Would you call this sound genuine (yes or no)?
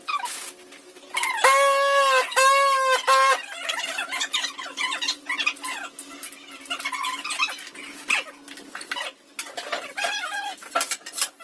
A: yes